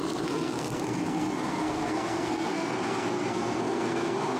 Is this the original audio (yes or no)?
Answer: no